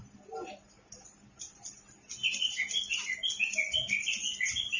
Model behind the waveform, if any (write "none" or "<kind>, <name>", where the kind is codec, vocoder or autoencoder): none